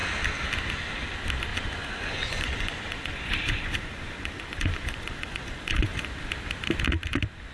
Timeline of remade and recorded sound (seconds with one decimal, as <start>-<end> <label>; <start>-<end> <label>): 0.0-1.5 recorded; 1.5-6.0 remade; 6.0-7.5 recorded

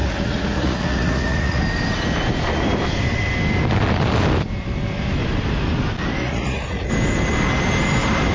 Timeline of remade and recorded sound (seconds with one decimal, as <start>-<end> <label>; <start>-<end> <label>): 0.0-1.6 remade; 1.6-6.2 recorded; 6.2-6.9 remade; 6.9-8.3 recorded

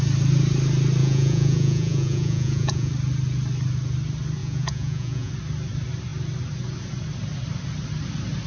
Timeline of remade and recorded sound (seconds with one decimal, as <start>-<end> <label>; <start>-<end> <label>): 0.0-1.0 recorded; 1.0-2.9 remade; 2.9-4.4 recorded; 4.4-5.3 remade; 5.3-8.5 recorded

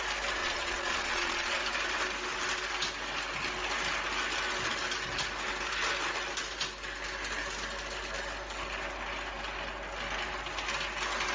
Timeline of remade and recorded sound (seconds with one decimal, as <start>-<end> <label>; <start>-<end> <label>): 0.0-0.4 recorded; 0.4-1.6 remade; 1.6-11.3 recorded